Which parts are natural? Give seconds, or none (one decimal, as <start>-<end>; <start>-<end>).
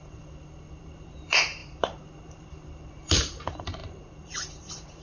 none